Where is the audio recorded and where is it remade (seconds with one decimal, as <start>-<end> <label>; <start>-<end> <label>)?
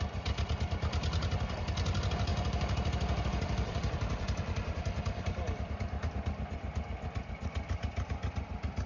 0.0-2.3 recorded; 2.3-7.3 remade; 7.3-8.9 recorded